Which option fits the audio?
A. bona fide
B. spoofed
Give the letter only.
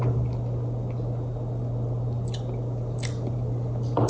A